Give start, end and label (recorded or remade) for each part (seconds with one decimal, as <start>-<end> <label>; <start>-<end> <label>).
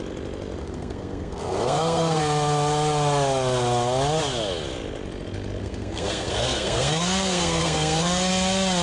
0.0-0.6 recorded; 0.6-2.2 remade; 2.2-5.6 recorded; 5.6-8.3 remade; 8.3-8.8 recorded